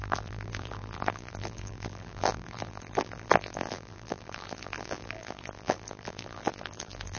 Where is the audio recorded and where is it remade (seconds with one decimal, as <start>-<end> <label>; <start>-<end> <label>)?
0.0-7.2 remade